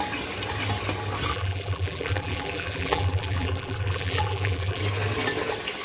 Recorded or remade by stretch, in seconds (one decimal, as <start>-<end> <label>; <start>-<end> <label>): 0.0-1.3 recorded; 1.3-4.8 remade; 4.8-5.8 recorded